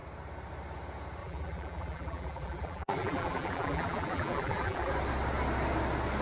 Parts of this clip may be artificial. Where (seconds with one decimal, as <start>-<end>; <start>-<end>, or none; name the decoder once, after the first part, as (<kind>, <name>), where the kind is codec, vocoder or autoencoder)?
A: 1.2-4.9 (vocoder, BigVGAN v2)